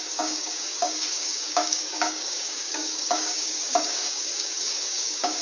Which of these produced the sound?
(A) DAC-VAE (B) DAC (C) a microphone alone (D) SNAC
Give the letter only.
B